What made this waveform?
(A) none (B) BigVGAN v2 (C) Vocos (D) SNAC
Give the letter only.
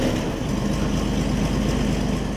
A